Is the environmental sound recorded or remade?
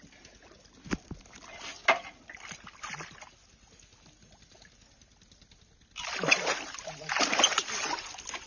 recorded